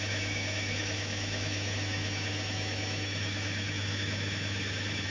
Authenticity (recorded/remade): remade